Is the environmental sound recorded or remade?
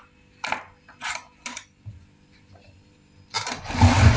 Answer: recorded